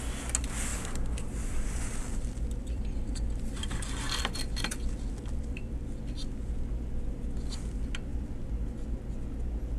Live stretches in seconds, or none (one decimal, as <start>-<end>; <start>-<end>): 0.0-0.7; 5.6-9.8